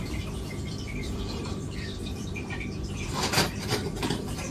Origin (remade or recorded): remade